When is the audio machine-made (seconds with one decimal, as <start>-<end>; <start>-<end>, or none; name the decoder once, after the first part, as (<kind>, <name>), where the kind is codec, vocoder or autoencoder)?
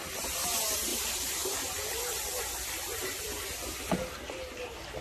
none